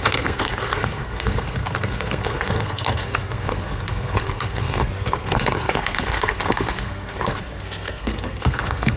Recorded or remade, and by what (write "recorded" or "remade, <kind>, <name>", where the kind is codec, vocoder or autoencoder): remade, codec, SNAC